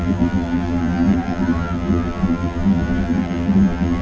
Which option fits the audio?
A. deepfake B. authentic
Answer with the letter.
A